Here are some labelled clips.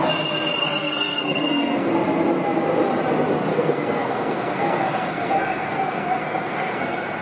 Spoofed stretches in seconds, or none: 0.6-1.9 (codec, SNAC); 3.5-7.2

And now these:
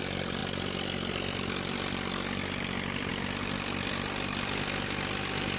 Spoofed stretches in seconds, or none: none

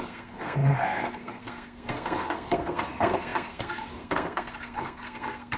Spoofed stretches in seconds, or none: 0.0-5.6 (codec, SNAC)

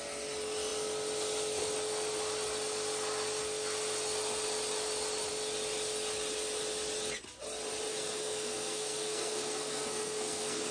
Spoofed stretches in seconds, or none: 7.9-10.7 (codec, SNAC)

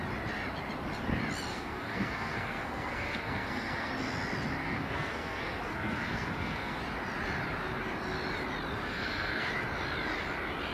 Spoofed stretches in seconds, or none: 1.5-3.9 (codec, SNAC); 4.6-6.8; 8.9-9.5

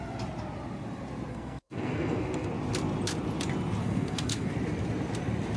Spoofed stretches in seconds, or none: 1.3-2.5 (codec, SNAC); 3.8-4.5

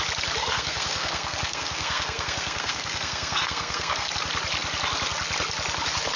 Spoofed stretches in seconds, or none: 0.4-4.1 (codec, SNAC)

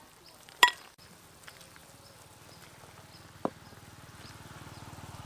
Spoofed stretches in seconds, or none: none